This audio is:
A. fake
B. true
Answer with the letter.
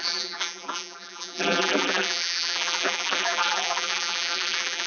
A